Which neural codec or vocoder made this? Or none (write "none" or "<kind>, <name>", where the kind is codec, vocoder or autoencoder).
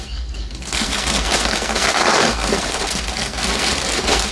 codec, SNAC